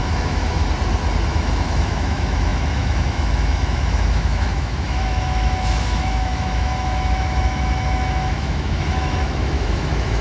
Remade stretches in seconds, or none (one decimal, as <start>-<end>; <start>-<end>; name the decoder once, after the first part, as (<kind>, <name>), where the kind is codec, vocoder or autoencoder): 0.0-0.6 (autoencoder, DAC-VAE); 1.3-10.2